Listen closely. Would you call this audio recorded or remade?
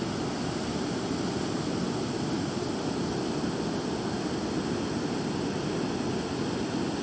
recorded